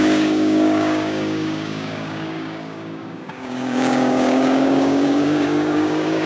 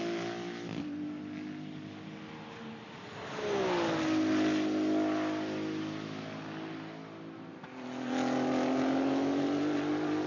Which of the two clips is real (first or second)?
second